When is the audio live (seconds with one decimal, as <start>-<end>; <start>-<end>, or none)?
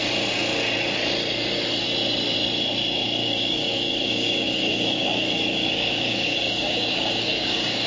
0.0-3.2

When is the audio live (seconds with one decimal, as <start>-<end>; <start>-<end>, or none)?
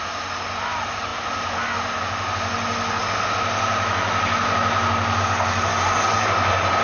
0.0-5.7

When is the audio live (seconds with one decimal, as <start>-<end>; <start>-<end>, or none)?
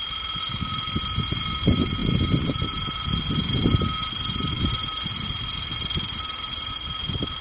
0.0-7.4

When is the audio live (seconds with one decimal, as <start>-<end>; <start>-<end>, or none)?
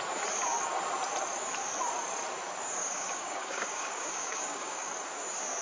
0.0-2.8; 4.9-5.6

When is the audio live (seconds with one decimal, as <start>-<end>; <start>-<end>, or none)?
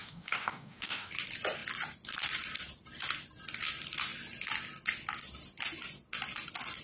1.1-6.8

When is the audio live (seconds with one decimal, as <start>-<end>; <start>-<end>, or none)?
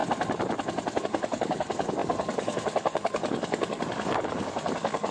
0.0-1.0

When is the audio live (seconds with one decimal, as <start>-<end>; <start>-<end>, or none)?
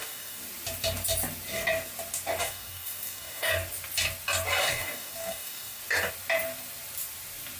0.4-2.4; 3.5-4.6; 5.8-7.6